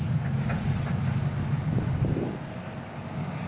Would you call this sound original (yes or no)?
yes